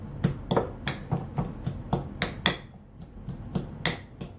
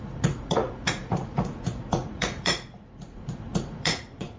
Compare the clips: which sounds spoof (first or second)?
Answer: second